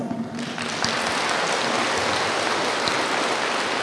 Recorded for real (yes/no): yes